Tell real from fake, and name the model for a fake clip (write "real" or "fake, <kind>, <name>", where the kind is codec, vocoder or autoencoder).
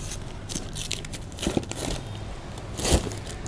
real